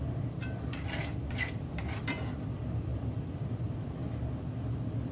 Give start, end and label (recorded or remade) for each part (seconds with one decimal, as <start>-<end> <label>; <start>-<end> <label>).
0.0-4.0 remade; 4.0-5.1 recorded